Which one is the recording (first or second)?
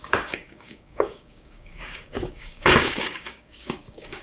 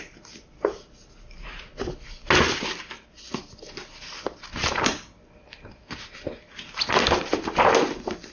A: second